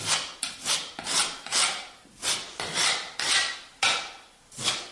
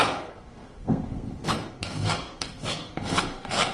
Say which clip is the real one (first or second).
first